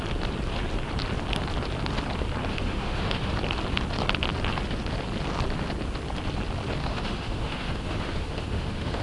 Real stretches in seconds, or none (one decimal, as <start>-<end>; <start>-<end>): 0.0-2.5; 3.3-6.8